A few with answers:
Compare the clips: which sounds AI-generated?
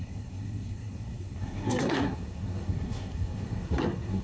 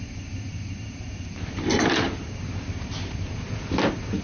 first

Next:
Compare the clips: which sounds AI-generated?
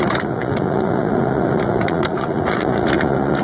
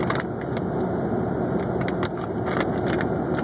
first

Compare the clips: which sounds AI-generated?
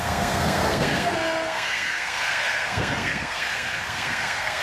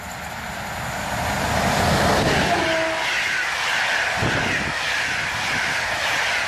first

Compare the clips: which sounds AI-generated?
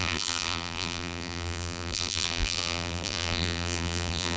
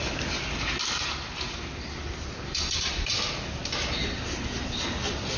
first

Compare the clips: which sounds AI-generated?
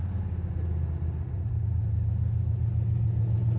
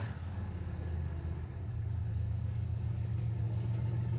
second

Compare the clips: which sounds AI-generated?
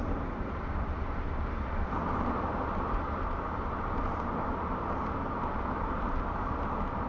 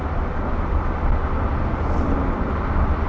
first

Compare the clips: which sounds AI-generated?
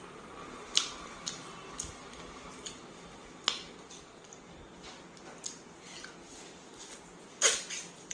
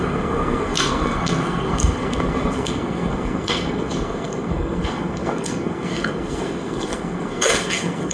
second